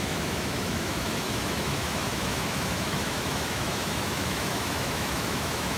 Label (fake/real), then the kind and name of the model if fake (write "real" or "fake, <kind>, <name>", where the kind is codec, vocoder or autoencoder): fake, autoencoder, DAC-VAE